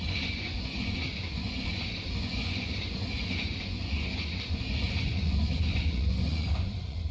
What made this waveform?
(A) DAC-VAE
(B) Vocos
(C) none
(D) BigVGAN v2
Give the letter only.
B